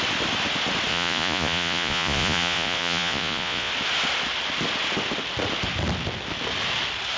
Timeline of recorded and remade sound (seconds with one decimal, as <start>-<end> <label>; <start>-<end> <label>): 0.0-0.9 recorded; 0.9-3.7 remade; 3.7-7.2 recorded